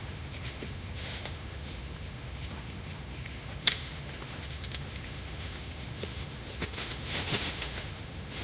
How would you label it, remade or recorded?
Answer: remade